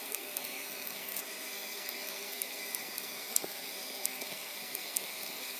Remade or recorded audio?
remade